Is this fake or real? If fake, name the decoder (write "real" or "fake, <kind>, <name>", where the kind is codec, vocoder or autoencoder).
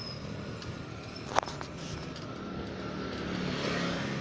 real